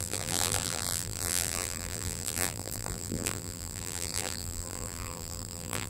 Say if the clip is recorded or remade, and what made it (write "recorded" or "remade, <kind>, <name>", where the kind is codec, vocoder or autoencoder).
remade, vocoder, BigVGAN v2